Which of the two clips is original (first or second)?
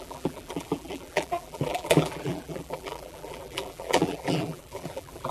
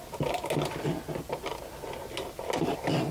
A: second